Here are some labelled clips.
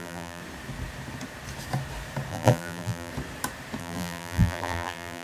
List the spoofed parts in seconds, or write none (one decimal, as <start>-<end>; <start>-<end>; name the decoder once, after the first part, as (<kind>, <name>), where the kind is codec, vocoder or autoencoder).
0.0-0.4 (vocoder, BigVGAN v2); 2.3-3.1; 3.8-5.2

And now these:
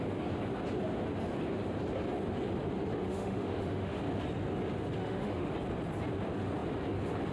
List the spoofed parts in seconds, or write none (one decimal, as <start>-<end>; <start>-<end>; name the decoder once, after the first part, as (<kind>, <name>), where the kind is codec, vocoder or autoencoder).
3.1-4.0 (autoencoder, DAC-VAE); 5.0-5.5

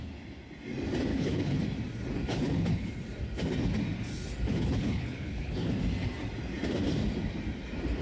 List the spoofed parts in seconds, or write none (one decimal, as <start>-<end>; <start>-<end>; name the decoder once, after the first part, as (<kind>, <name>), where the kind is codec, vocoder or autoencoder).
1.1-1.6 (codec, HILCodec); 2.3-2.9; 4.5-5.7